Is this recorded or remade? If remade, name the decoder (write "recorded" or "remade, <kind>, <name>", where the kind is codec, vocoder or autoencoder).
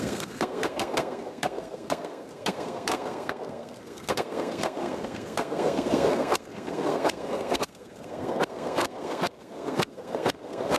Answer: remade, codec, SNAC